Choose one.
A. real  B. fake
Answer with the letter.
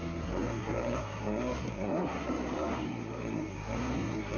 B